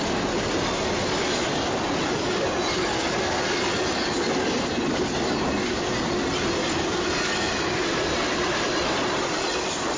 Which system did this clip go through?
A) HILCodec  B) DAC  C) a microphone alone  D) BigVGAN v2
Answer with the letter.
C